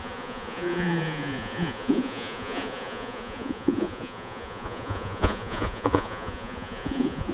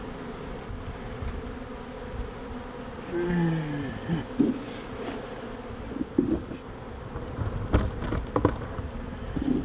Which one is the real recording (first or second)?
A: second